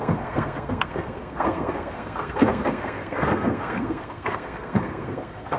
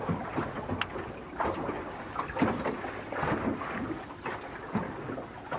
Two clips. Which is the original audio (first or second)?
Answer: second